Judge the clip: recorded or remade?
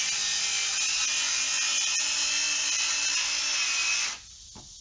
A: recorded